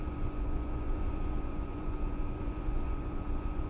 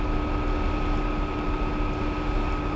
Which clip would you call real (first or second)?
second